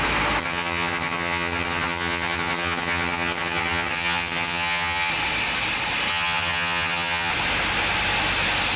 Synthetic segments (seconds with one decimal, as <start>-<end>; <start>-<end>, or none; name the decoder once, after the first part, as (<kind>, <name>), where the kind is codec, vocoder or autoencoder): 0.4-5.1 (vocoder, HiFi-GAN); 6.1-7.3